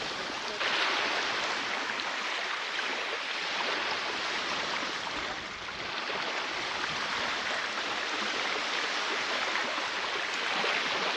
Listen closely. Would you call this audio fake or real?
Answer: real